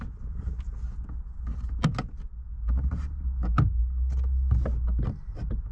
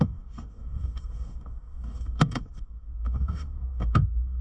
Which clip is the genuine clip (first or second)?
first